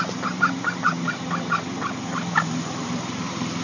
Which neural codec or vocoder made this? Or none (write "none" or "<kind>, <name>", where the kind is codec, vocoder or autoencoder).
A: vocoder, BigVGAN v2